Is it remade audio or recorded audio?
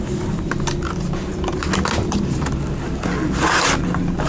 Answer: recorded